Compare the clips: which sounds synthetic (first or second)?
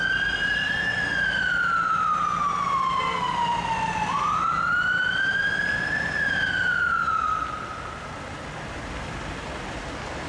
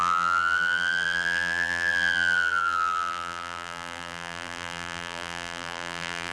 second